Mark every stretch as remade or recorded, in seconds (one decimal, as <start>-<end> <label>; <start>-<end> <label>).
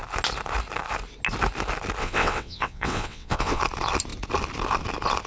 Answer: 0.0-2.0 recorded; 2.0-3.6 remade; 3.6-5.3 recorded